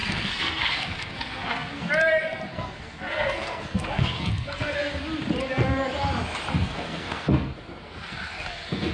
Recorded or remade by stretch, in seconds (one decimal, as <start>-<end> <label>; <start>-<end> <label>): 0.0-1.9 remade; 1.9-2.5 recorded; 2.5-4.9 remade; 4.9-6.5 recorded; 6.5-8.9 remade